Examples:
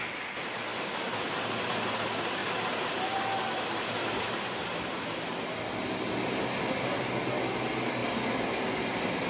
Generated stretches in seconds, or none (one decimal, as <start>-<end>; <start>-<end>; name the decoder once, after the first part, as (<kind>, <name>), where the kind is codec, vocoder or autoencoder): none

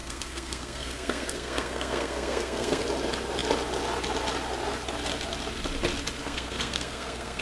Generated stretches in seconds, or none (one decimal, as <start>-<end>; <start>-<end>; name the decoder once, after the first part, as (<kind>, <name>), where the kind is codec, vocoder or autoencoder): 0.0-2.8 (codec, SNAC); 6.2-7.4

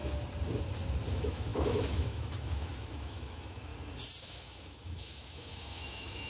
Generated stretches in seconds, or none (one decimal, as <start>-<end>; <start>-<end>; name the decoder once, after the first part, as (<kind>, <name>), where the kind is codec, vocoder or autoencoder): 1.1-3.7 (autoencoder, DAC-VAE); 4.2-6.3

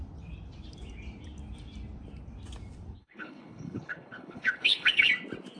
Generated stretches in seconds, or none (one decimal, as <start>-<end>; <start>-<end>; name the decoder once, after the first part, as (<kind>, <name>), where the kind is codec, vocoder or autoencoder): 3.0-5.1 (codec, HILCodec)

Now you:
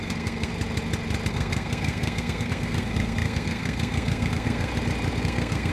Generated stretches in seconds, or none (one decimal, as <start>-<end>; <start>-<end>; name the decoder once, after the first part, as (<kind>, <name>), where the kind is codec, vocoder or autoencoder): 0.0-0.5 (codec, SNAC); 1.3-4.7; 5.2-5.7